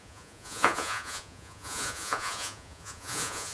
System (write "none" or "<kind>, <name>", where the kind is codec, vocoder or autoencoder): vocoder, Vocos